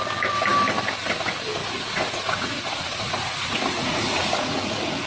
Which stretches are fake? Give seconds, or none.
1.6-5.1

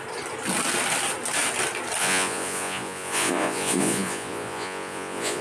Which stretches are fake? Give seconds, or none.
2.0-5.4